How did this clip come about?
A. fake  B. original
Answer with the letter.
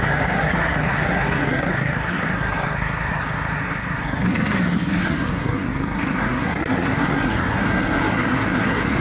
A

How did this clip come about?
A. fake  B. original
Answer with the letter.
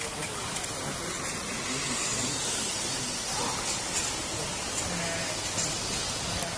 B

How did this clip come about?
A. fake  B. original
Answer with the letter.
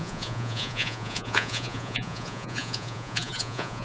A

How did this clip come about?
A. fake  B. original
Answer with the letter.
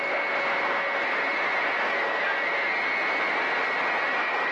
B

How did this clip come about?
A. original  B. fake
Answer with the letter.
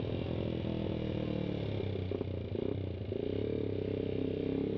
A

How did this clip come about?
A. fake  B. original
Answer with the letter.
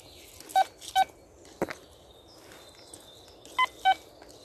B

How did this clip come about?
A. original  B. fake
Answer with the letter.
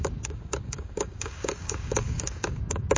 B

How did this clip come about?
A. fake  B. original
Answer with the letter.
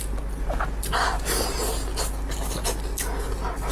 B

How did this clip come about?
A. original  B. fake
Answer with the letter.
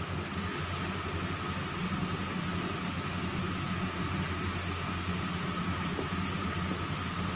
A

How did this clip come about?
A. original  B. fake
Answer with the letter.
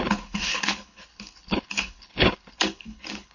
B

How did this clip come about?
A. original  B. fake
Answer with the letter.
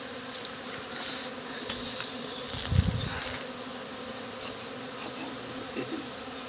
A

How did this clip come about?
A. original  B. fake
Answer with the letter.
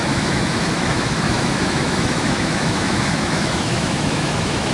B